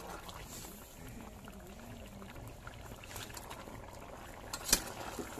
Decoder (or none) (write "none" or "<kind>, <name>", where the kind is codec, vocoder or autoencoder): none